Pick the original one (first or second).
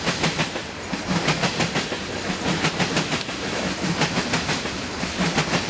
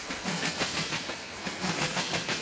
first